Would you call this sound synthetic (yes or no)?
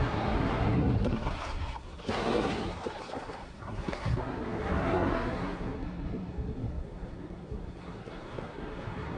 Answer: yes